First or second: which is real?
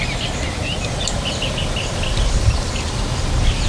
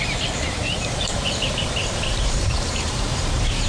first